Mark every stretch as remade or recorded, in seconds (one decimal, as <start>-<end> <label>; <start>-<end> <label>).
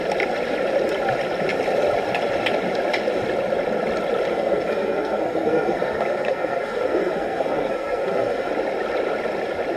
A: 0.0-4.3 recorded; 4.3-8.5 remade; 8.5-9.8 recorded